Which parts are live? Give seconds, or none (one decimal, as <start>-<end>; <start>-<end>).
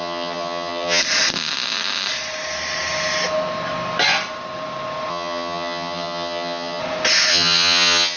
1.0-5.1; 6.8-7.3